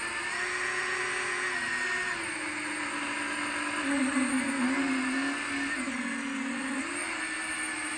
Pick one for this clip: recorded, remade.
recorded